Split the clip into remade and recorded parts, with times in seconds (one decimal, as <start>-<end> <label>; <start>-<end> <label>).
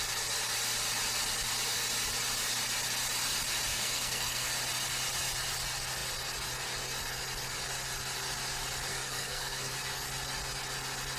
0.0-3.7 recorded; 3.7-4.5 remade; 4.5-8.9 recorded; 8.9-9.7 remade; 9.7-11.2 recorded